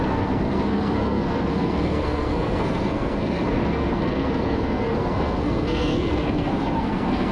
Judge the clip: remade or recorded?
remade